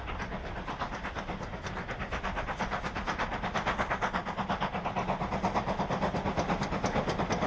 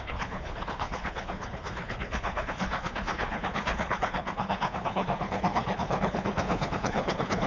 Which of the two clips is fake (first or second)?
second